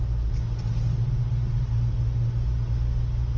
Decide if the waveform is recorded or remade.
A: recorded